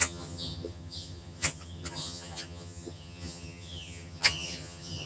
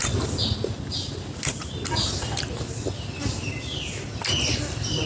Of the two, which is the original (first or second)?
second